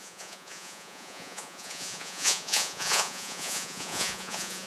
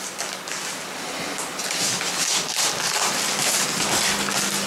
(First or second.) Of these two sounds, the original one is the second